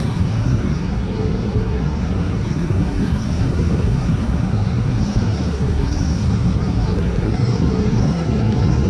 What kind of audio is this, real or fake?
fake